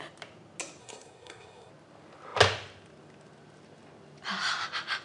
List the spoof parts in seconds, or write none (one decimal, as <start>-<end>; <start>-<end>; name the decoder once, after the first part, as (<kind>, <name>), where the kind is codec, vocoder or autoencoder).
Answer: 0.8-1.7 (codec, SNAC)